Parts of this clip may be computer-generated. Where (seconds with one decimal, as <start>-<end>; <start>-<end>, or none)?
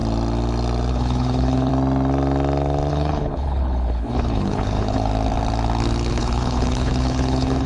0.9-1.7; 2.9-5.1; 6.1-7.7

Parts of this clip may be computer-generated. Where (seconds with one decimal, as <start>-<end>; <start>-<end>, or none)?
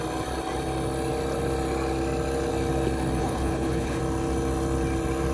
3.2-4.0